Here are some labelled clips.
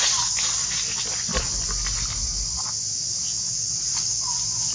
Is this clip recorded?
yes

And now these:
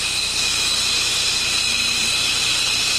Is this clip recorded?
no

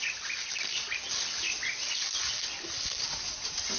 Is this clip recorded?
yes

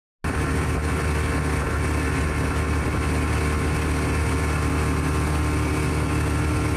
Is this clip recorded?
yes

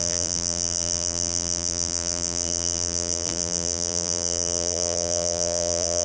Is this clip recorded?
no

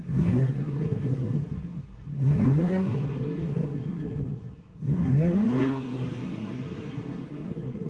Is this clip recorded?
no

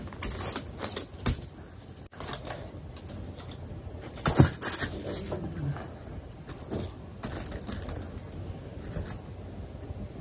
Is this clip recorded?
yes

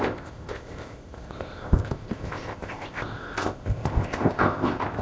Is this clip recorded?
no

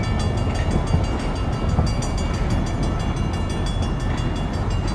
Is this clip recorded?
yes